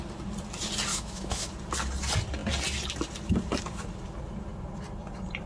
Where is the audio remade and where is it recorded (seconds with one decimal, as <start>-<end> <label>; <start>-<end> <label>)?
0.0-0.9 recorded; 0.9-1.5 remade; 1.5-5.5 recorded